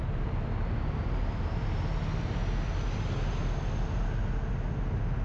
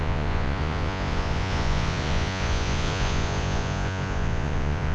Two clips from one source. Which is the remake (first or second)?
second